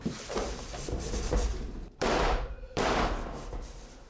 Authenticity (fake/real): fake